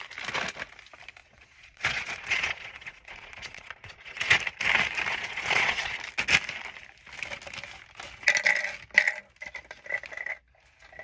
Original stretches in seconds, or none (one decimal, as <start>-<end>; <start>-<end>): 0.0-1.2; 4.4-5.1; 5.9-11.0